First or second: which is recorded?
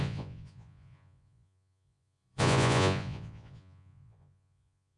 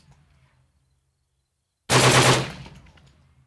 second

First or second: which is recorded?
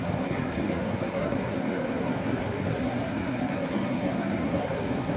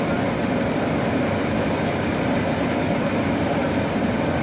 second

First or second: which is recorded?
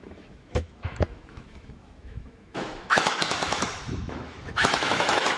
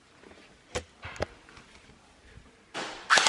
second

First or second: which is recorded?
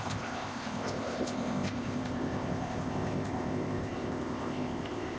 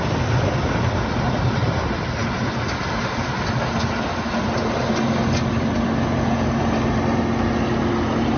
second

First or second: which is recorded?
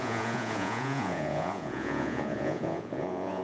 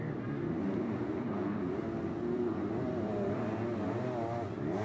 second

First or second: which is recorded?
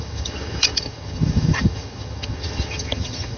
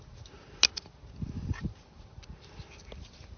second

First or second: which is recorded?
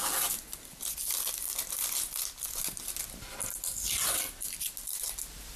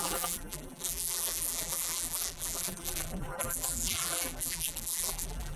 first